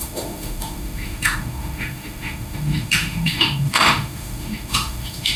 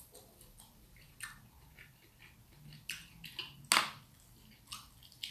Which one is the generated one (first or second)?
first